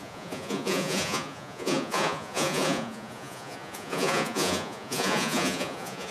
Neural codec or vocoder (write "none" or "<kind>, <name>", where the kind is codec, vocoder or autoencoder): vocoder, Vocos